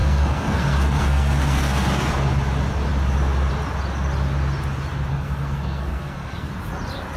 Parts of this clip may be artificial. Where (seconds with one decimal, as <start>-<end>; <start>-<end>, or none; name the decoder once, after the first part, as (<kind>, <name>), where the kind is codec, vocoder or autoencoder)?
0.0-2.3 (codec, SNAC); 5.1-6.5